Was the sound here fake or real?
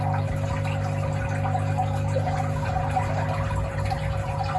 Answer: real